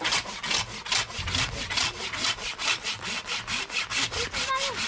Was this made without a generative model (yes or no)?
yes